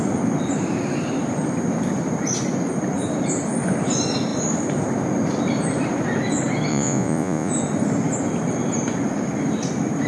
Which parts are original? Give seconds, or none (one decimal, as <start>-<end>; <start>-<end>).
0.0-6.7; 7.5-10.1